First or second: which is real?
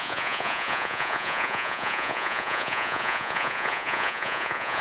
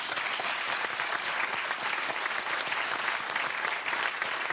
second